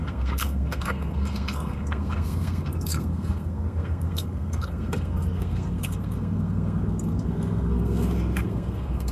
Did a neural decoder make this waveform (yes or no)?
yes